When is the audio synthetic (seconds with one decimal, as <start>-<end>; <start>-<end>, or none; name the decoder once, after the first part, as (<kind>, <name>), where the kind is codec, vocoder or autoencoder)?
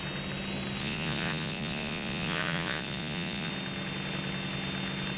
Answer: 0.8-3.5 (vocoder, Vocos)